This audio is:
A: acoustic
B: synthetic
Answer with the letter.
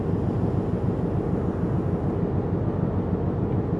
A